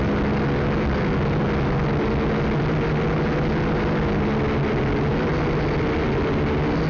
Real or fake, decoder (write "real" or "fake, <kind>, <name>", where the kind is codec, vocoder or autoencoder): real